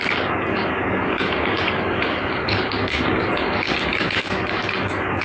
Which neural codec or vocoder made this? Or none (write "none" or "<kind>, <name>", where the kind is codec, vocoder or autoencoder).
codec, DAC